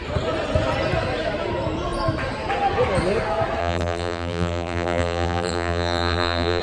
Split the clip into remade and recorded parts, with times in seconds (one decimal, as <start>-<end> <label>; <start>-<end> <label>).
0.0-3.6 recorded; 3.6-6.6 remade